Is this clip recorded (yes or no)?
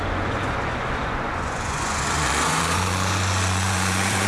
no